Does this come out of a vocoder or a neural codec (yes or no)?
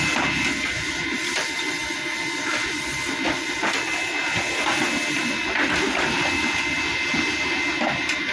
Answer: no